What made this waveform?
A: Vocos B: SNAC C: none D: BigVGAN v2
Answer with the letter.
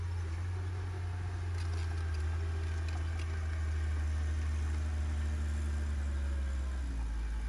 C